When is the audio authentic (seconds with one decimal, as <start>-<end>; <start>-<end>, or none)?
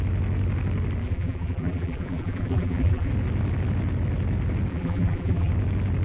0.0-1.0; 3.1-4.7; 5.5-6.0